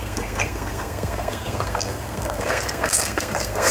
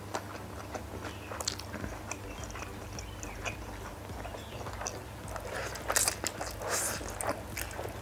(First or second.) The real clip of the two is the second